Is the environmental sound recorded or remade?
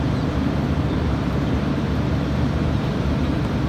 remade